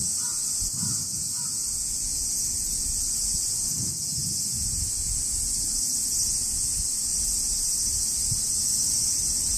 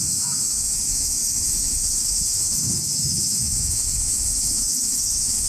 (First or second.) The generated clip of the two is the second